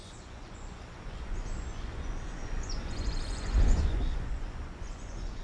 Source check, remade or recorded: remade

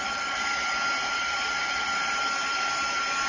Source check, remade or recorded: recorded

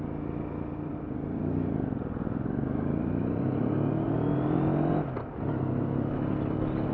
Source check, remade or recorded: recorded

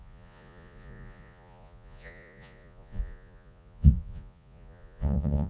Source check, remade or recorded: remade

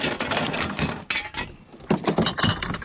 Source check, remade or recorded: recorded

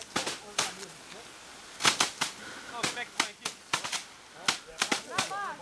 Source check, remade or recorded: recorded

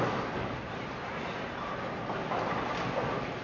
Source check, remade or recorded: recorded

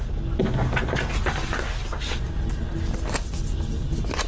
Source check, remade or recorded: recorded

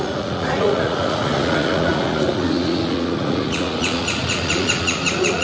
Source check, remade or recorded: remade